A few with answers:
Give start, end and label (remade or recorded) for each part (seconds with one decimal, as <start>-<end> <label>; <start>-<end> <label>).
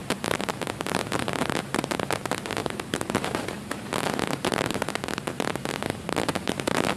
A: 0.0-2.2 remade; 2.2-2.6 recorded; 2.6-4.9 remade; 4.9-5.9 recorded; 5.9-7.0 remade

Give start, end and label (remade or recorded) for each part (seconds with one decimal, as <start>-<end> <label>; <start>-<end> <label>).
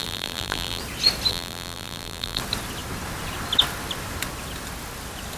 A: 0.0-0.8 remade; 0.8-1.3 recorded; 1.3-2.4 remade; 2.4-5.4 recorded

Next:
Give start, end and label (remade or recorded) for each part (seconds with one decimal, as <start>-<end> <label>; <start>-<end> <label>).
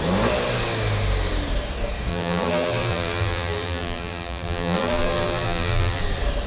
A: 0.0-2.1 recorded; 2.1-6.0 remade; 6.0-6.5 recorded